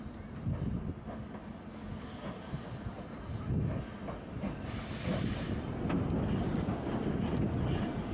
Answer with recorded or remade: recorded